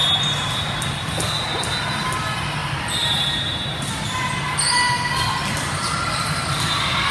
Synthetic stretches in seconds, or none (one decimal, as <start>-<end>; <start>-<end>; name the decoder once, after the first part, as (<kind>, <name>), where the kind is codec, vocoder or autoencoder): none